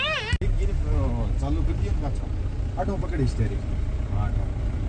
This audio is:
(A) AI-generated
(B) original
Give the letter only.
B